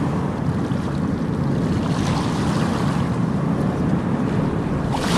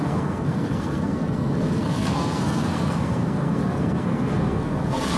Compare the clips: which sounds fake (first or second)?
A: second